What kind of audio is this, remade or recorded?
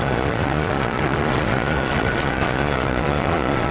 remade